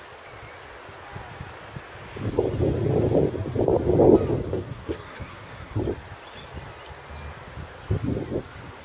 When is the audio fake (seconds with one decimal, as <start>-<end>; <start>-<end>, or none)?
4.5-5.8

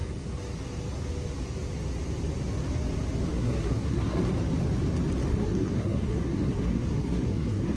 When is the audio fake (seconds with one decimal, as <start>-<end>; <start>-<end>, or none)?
3.3-4.2; 5.3-7.8

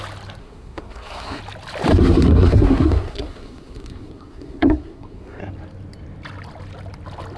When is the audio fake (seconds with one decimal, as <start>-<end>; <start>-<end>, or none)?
0.4-1.4; 1.9-5.4

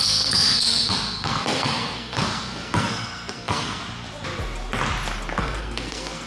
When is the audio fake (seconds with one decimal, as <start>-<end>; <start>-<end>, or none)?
0.0-3.8; 5.4-6.3

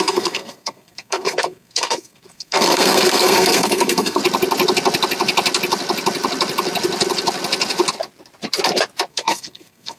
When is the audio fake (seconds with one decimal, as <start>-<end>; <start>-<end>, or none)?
0.0-4.2; 9.1-10.0